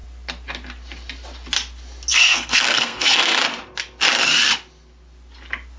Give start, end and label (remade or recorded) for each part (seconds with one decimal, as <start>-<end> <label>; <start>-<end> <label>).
0.0-2.1 recorded; 2.1-3.4 remade; 3.4-5.8 recorded